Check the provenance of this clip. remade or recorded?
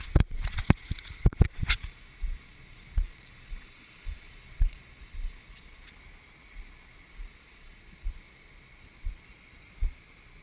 remade